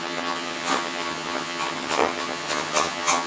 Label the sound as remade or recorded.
remade